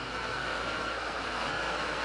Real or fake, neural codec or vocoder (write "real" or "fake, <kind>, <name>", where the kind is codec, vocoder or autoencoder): fake, codec, SNAC